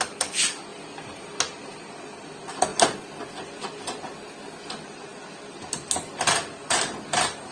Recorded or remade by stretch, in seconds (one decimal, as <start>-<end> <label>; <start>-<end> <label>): 0.0-7.5 recorded